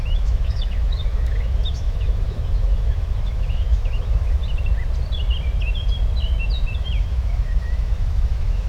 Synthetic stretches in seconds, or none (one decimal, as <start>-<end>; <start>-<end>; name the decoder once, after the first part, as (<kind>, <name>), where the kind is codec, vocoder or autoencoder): 0.0-4.4 (autoencoder, DAC-VAE); 6.8-8.7